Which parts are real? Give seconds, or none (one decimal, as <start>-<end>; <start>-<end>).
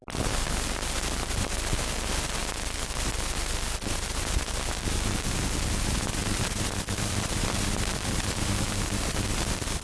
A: 0.0-6.2